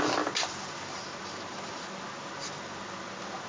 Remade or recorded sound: recorded